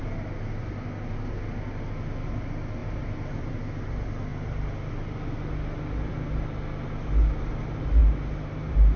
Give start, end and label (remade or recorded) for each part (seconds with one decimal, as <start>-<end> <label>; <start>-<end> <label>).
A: 0.0-2.8 recorded; 2.8-3.5 remade; 3.5-8.0 recorded; 8.0-9.0 remade

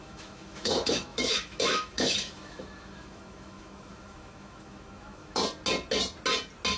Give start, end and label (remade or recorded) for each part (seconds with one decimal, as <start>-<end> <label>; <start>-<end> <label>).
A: 0.0-5.4 remade; 5.4-6.8 recorded

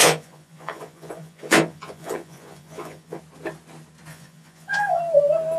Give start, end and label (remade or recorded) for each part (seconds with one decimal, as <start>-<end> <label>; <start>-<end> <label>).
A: 0.0-3.2 remade; 3.2-4.1 recorded; 4.1-5.0 remade; 5.0-5.6 recorded

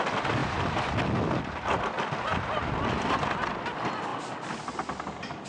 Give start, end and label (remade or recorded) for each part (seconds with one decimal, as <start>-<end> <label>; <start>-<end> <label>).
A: 0.0-0.4 recorded; 0.4-1.2 remade; 1.2-2.3 recorded; 2.3-3.6 remade; 3.6-5.5 recorded